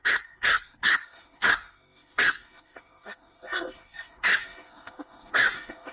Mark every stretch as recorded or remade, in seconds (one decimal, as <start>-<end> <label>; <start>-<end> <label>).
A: 0.0-5.9 remade